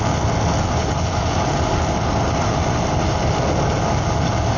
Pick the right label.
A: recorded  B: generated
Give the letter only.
A